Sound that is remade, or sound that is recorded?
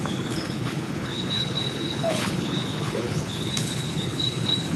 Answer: remade